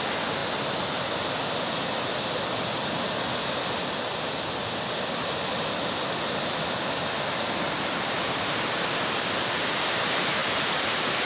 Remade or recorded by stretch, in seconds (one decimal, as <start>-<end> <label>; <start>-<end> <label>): 0.0-11.3 recorded